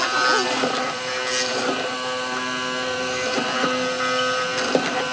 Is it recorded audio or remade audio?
recorded